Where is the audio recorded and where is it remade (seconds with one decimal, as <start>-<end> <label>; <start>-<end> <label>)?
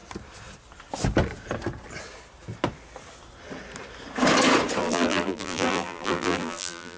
0.0-4.8 recorded; 4.8-7.0 remade